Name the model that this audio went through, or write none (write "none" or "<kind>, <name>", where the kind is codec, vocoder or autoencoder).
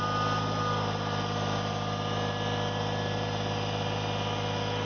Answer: none